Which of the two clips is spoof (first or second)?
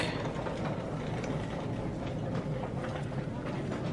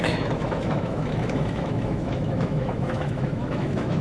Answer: second